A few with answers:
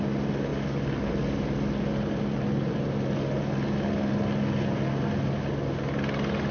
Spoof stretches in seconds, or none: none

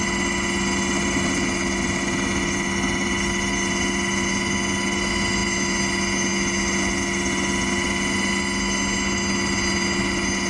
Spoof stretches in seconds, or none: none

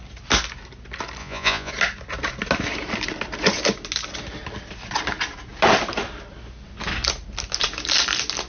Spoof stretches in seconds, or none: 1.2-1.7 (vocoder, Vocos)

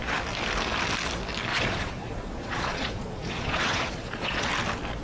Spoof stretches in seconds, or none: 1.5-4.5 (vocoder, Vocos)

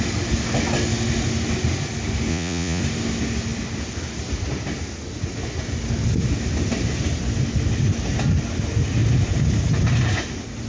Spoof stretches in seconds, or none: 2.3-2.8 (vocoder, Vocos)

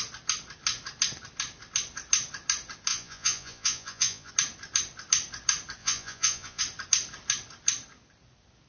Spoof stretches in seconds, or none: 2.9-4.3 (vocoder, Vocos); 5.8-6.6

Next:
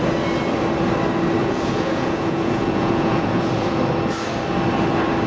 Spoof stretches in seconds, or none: 1.4-3.8 (vocoder, Vocos)

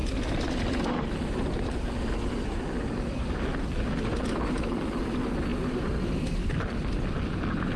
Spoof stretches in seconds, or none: none